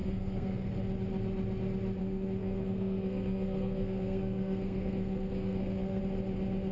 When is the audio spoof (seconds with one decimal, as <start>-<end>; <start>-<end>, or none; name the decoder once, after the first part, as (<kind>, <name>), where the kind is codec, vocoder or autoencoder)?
0.0-0.7 (codec, SNAC); 2.0-6.0